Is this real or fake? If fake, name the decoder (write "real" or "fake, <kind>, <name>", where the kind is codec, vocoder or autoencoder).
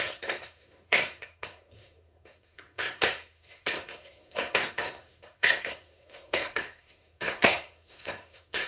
fake, codec, SNAC